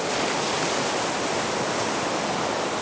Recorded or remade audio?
recorded